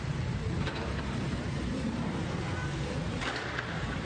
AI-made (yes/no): yes